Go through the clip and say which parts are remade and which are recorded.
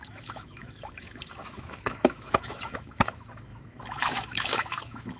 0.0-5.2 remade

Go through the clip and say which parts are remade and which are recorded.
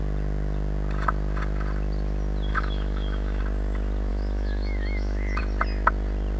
0.0-2.5 recorded; 2.5-3.4 remade; 3.4-4.1 recorded; 4.1-5.4 remade; 5.4-6.4 recorded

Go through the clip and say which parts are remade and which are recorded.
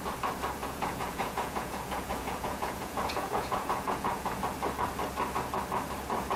0.0-0.6 recorded; 0.6-4.4 remade; 4.4-6.4 recorded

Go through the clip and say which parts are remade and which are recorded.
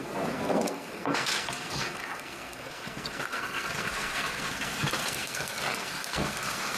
0.0-6.8 remade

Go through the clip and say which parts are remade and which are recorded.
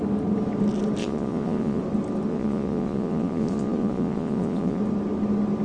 0.0-1.0 recorded; 1.0-1.8 remade; 1.8-2.3 recorded; 2.3-4.8 remade; 4.8-5.6 recorded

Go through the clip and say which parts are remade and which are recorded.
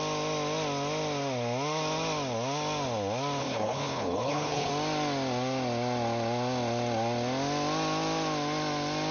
0.0-3.4 recorded; 3.4-4.7 remade; 4.7-9.1 recorded